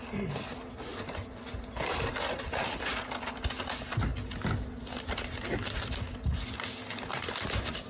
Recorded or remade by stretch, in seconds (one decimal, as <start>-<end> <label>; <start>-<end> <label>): 0.0-7.9 recorded